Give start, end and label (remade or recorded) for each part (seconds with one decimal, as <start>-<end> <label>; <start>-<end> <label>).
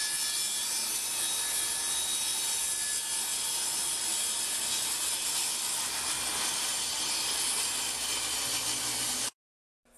0.0-10.0 recorded